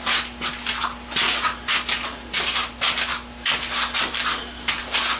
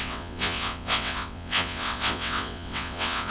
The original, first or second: first